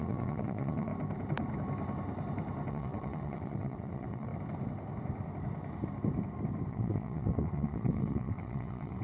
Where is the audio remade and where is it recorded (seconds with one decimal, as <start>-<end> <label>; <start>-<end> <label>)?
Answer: 0.0-0.9 remade; 0.9-2.7 recorded; 2.7-4.3 remade; 4.3-6.7 recorded; 6.7-9.0 remade